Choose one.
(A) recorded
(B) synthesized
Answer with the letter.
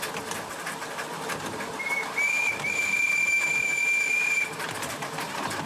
A